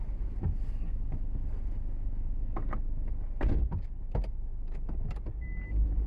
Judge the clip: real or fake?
real